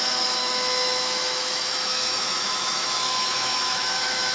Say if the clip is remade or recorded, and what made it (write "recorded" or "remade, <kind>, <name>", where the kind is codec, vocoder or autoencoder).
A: remade, autoencoder, DAC-VAE